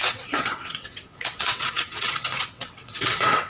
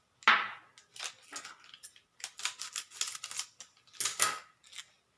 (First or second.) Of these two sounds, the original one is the second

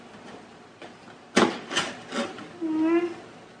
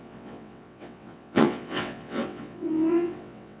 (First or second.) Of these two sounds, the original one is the first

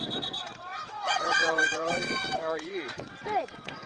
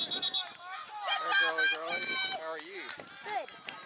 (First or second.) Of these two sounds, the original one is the second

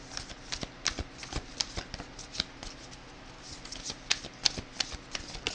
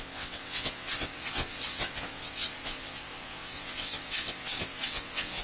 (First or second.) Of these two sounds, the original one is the first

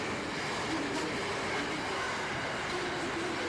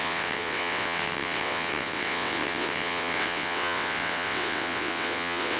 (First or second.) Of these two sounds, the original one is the first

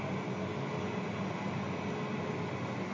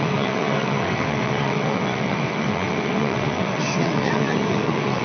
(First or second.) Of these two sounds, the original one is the first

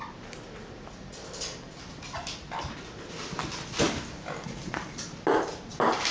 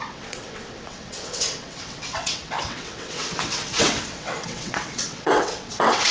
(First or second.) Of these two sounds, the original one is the first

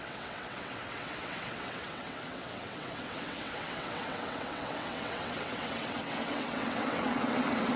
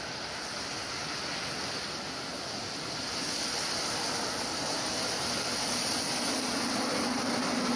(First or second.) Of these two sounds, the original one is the second